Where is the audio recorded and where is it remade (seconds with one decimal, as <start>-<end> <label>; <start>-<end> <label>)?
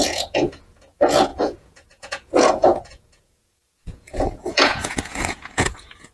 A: 0.0-6.1 remade